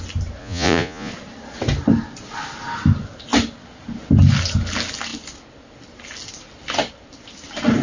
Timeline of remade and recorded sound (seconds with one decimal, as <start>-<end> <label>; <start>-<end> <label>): 0.0-0.4 recorded; 0.4-1.1 remade; 1.1-7.8 recorded